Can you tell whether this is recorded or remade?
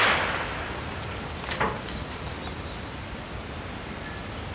recorded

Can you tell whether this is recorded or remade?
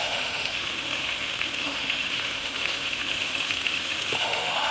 remade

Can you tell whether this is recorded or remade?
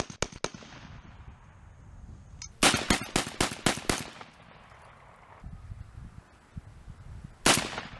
recorded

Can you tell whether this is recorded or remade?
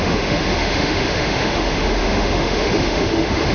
remade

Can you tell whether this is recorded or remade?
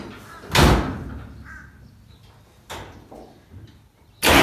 recorded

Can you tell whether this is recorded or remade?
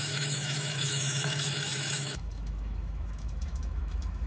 remade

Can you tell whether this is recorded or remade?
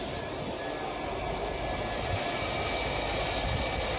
recorded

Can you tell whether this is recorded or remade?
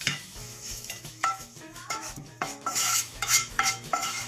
remade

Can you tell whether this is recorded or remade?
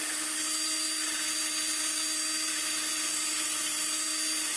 recorded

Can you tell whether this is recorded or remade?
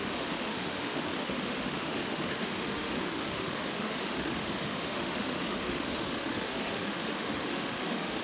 remade